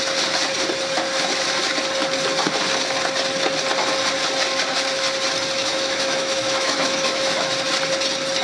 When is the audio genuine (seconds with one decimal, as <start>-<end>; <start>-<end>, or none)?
0.0-5.7; 7.5-8.4